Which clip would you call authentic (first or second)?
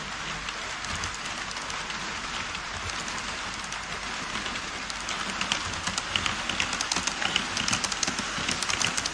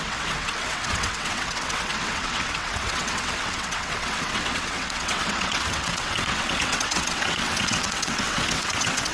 first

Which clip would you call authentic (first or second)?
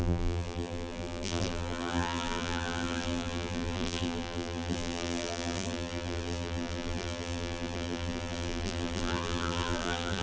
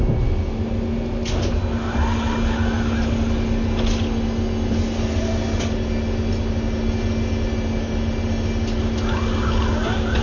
second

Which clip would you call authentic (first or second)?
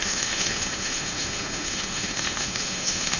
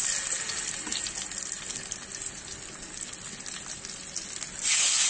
second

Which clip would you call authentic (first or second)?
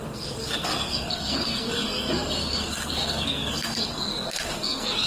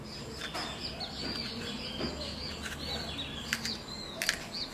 second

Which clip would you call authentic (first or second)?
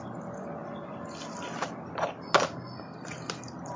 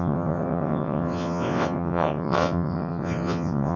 first